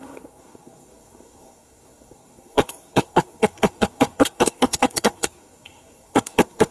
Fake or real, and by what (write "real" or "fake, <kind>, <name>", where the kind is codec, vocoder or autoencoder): fake, codec, SNAC